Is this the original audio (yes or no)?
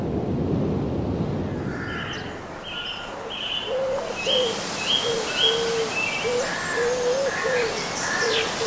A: yes